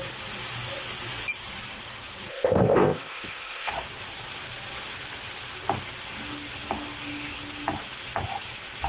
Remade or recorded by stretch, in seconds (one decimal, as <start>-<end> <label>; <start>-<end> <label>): 0.0-2.3 recorded; 2.3-3.7 remade; 3.7-8.9 recorded